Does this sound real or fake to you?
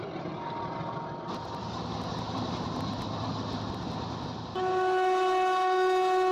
real